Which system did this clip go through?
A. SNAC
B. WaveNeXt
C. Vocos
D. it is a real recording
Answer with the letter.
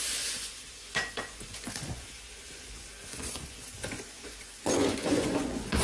C